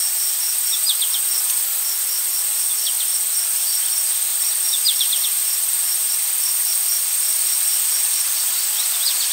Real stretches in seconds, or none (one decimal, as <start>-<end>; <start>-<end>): 1.8-4.3; 6.1-9.3